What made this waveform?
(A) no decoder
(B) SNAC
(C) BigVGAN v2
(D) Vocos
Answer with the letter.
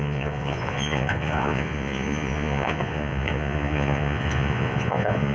D